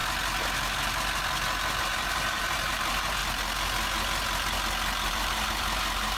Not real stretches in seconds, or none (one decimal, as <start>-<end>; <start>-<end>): 1.8-3.2; 5.1-6.2